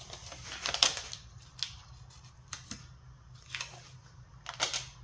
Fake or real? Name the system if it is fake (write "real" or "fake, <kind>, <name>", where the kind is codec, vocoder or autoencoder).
real